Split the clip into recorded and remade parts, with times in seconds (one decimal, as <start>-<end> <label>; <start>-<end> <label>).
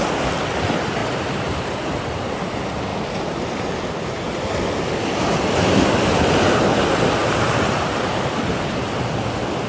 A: 0.0-1.0 recorded; 1.0-2.3 remade; 2.3-7.2 recorded; 7.2-8.3 remade; 8.3-9.7 recorded